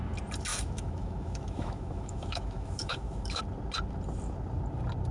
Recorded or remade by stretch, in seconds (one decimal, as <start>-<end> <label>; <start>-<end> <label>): 0.0-0.5 recorded; 0.5-3.4 remade; 3.4-5.1 recorded